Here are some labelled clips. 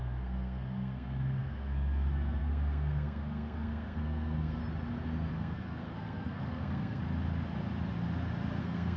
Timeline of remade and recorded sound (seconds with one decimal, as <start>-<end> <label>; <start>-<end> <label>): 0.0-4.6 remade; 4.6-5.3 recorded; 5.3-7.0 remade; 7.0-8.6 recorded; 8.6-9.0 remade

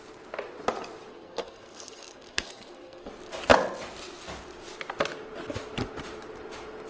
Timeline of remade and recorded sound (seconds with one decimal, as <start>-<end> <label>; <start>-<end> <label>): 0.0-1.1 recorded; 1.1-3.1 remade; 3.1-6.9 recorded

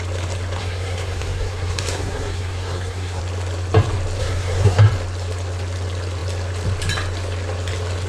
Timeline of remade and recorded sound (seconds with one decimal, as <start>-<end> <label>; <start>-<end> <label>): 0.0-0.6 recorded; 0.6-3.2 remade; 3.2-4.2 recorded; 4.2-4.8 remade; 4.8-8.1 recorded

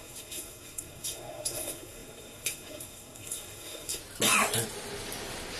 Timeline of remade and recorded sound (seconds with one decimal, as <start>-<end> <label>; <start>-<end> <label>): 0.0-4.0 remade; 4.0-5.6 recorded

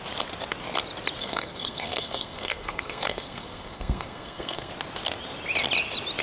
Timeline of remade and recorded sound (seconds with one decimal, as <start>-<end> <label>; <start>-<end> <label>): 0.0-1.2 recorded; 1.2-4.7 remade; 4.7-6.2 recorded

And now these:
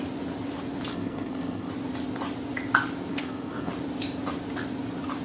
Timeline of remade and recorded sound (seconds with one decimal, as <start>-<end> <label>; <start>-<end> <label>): 0.0-0.9 recorded; 0.9-1.7 remade; 1.7-3.1 recorded; 3.1-3.7 remade; 3.7-5.2 recorded